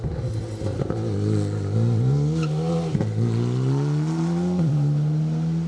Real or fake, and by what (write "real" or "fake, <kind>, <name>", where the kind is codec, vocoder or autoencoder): real